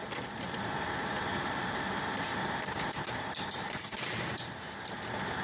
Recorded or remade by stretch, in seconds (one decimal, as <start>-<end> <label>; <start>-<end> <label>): 0.0-1.3 recorded; 1.3-4.5 remade; 4.5-5.4 recorded